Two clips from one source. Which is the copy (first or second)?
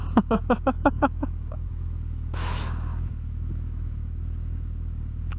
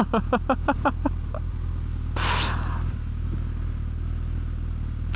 first